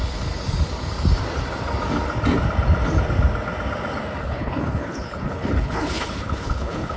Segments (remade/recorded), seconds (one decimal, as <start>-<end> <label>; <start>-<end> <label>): 0.0-4.2 recorded; 4.2-7.0 remade